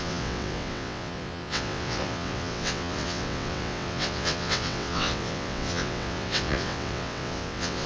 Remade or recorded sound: remade